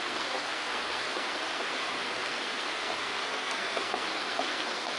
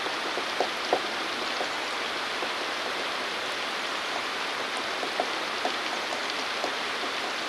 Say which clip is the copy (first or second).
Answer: first